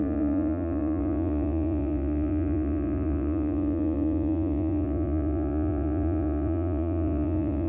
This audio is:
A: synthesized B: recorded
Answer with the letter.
A